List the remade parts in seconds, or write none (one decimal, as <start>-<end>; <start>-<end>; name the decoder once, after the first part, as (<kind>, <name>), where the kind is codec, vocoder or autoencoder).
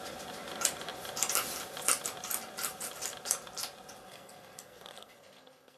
4.0-5.8 (codec, SNAC)